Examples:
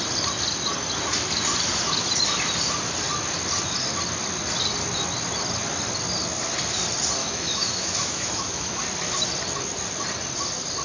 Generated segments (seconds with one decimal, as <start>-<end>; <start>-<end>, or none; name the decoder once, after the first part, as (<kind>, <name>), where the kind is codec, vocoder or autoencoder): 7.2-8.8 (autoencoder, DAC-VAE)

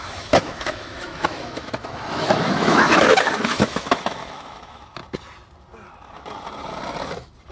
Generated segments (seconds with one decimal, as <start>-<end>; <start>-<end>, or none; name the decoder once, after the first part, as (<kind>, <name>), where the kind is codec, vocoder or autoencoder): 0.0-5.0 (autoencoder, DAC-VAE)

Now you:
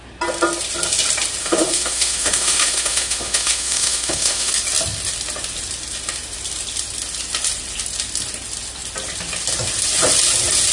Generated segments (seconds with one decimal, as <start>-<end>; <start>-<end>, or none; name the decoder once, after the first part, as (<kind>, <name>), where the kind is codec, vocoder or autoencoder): 1.4-4.5 (autoencoder, DAC-VAE)